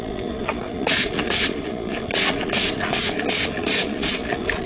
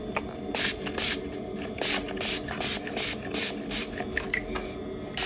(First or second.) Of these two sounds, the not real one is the first